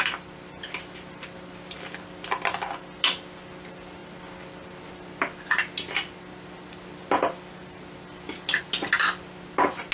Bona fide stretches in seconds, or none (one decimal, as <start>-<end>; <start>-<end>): 0.0-9.9